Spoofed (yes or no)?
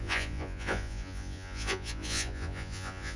yes